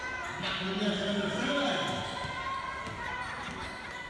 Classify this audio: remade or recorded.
recorded